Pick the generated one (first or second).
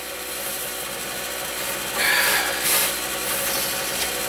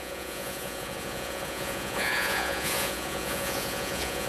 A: second